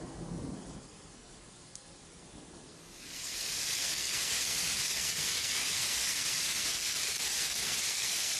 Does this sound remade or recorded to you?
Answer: remade